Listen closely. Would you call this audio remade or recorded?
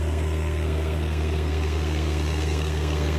remade